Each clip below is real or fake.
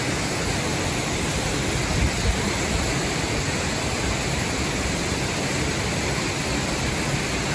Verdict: real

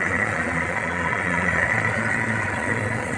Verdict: fake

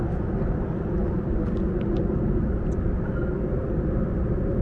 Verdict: real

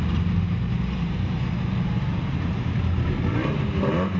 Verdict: real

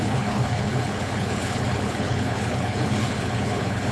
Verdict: fake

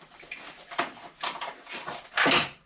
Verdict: real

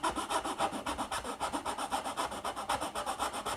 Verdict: real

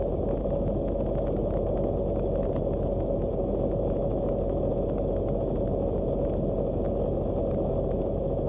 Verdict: real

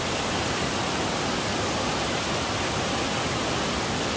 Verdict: real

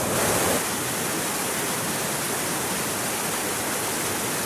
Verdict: real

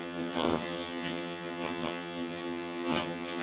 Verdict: fake